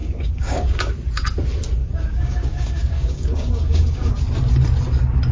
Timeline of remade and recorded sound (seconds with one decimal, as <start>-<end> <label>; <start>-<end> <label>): 0.0-0.9 remade; 0.9-1.8 recorded; 1.8-4.1 remade; 4.1-5.3 recorded